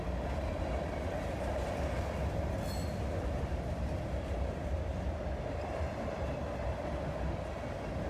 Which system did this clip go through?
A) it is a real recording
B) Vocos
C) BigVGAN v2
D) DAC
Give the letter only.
A